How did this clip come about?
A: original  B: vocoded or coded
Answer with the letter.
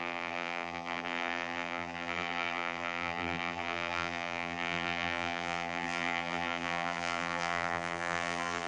B